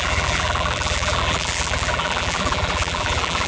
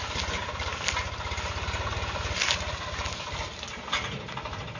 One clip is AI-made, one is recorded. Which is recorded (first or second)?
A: second